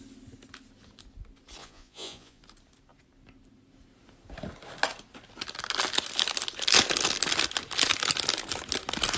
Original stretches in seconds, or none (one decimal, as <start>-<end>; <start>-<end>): 0.0-1.6; 2.4-9.2